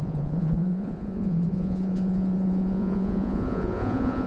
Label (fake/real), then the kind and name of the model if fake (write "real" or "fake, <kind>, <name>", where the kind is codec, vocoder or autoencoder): fake, vocoder, Vocos